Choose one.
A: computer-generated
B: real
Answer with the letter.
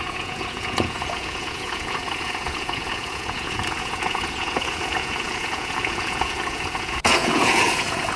A